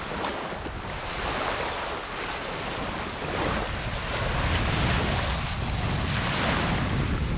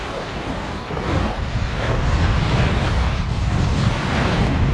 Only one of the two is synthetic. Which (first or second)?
second